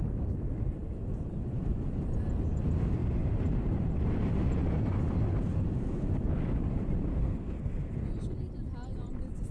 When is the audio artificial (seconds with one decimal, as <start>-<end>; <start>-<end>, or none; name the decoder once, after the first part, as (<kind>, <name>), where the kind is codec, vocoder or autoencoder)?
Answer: 7.1-7.9 (codec, SNAC)